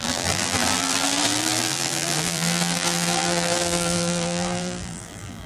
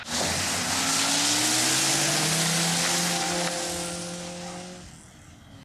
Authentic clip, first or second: second